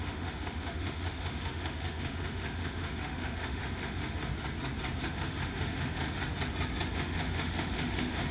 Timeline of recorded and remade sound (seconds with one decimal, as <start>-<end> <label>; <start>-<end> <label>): 0.0-4.3 remade; 4.3-5.1 recorded; 5.1-6.2 remade; 6.2-6.9 recorded; 6.9-8.3 remade